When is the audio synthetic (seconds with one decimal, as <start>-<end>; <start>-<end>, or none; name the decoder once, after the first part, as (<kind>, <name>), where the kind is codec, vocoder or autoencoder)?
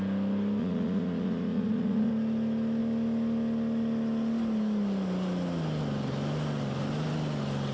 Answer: 0.6-2.1 (vocoder, Vocos)